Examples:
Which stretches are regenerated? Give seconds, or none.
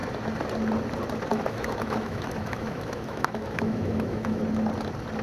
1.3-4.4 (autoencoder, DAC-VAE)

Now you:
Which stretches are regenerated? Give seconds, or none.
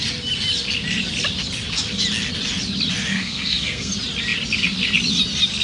3.1-3.9 (codec, SNAC)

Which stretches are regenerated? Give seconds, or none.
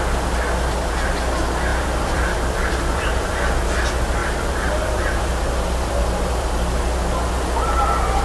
1.7-3.6 (vocoder, BigVGAN v2); 4.2-6.8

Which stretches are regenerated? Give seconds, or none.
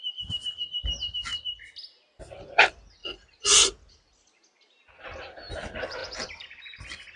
6.0-6.8 (vocoder, BigVGAN v2)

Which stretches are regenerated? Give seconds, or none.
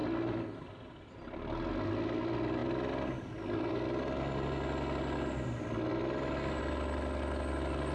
none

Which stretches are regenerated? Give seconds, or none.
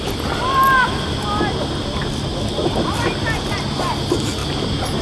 none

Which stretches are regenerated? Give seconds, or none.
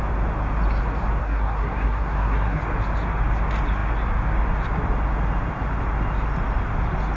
1.2-2.6 (codec, SNAC)